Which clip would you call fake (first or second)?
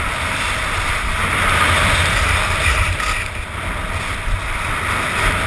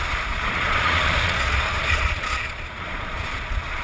second